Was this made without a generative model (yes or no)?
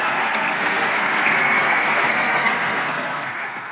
no